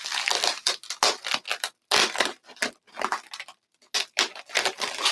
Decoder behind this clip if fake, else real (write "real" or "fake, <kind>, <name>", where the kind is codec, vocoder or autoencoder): real